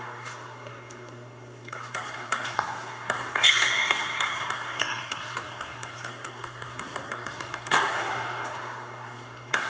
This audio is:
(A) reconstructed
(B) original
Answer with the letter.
A